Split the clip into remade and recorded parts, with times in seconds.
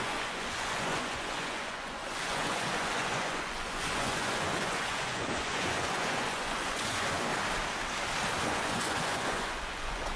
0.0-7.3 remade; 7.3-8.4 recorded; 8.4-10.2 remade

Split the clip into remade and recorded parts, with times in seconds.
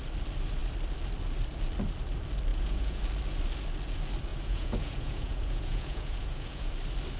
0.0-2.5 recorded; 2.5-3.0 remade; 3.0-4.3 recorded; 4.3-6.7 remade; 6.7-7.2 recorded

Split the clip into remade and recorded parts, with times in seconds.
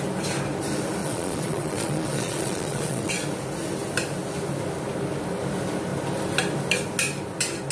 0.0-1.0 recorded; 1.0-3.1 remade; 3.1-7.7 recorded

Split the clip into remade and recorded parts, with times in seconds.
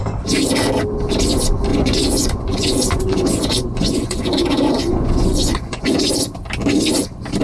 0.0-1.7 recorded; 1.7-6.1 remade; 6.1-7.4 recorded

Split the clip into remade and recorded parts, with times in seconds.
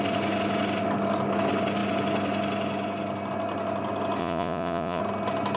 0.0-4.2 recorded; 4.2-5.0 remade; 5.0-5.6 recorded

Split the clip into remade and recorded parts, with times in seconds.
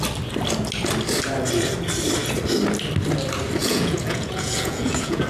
0.0-3.6 recorded; 3.6-5.3 remade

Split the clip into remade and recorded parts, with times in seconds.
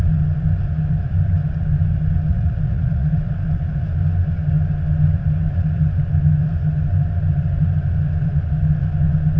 0.0-2.3 recorded; 2.3-3.3 remade; 3.3-9.4 recorded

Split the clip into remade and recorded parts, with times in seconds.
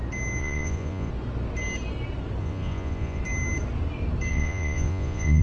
0.0-0.4 recorded; 0.4-1.1 remade; 1.1-2.4 recorded; 2.4-3.2 remade; 3.2-4.3 recorded; 4.3-5.4 remade